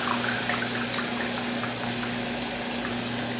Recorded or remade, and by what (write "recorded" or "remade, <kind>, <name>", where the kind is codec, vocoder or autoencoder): recorded